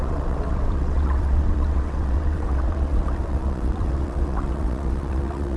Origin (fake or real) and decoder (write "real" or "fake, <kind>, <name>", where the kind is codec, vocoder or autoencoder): fake, vocoder, WaveNeXt